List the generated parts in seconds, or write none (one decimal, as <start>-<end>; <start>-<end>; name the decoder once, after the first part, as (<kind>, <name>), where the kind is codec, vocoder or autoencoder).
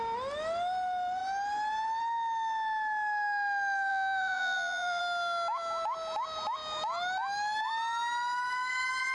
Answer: 3.9-5.0 (vocoder, BigVGAN v2)